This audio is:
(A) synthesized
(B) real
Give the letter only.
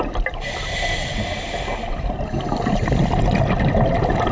B